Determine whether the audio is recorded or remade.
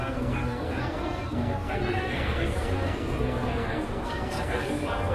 remade